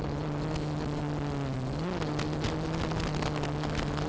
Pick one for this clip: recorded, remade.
recorded